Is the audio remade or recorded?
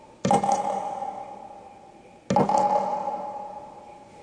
recorded